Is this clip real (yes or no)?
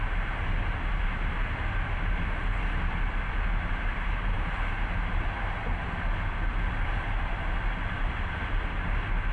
yes